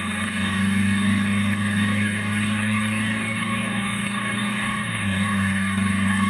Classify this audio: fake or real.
fake